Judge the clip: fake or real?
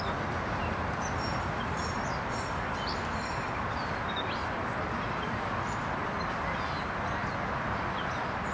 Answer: real